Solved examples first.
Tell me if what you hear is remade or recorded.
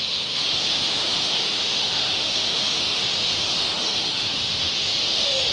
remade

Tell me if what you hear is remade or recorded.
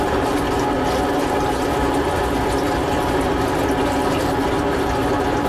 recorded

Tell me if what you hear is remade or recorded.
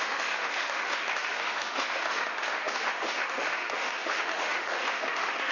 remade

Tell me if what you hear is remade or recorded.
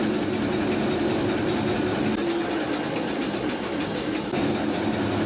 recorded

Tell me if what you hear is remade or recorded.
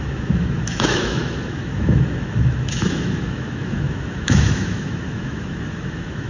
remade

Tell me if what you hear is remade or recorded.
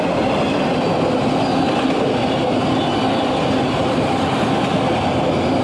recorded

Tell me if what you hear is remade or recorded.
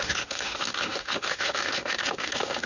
remade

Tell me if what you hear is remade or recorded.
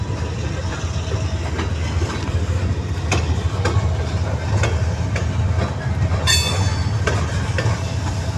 recorded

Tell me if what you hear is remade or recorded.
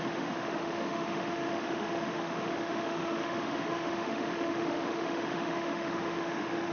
remade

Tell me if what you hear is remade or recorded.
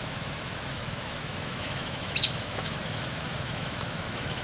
remade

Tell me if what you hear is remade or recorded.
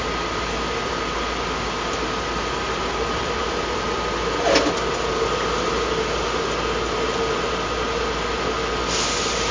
recorded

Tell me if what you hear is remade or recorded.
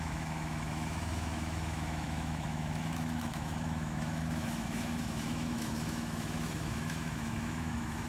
remade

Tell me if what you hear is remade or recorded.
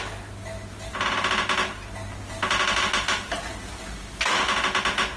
recorded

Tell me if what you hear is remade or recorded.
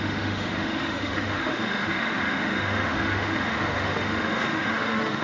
remade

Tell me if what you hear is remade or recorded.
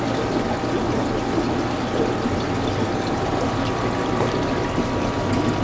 recorded